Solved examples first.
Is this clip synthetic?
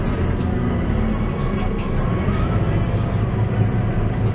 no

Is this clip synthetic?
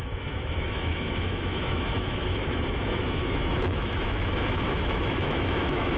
yes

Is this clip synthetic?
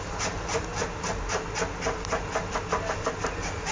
no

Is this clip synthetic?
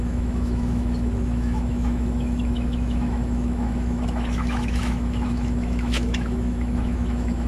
yes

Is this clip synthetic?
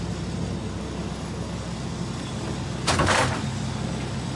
no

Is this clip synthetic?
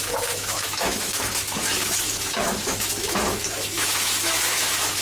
yes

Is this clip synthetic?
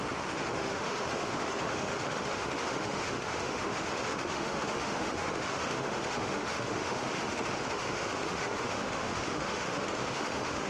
yes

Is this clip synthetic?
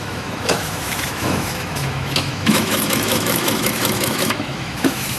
yes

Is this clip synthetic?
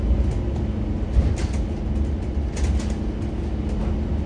no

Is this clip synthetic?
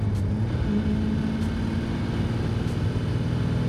no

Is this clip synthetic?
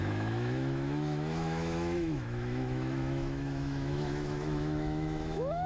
yes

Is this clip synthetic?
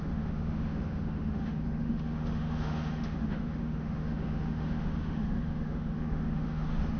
yes